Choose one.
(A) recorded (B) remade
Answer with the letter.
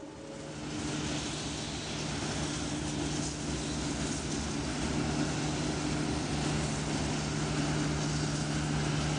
A